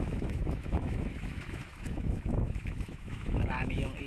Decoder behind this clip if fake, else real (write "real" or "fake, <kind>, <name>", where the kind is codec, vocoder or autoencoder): fake, autoencoder, DAC-VAE